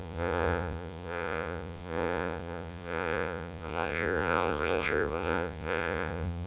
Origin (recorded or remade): remade